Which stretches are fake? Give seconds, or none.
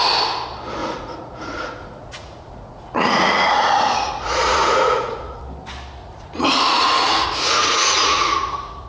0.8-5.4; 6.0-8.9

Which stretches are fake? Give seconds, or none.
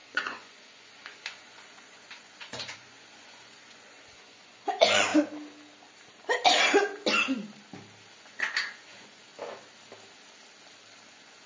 0.0-5.1; 8.1-9.3; 11.1-11.5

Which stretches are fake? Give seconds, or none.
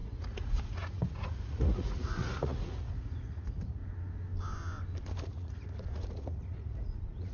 0.0-3.8; 5.2-7.3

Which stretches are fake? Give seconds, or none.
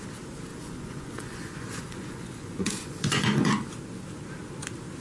0.5-3.5